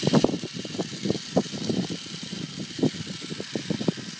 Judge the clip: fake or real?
real